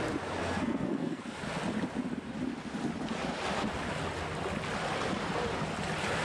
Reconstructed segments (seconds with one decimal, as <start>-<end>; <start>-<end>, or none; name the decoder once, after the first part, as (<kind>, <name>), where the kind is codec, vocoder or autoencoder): 0.4-1.2 (codec, SNAC)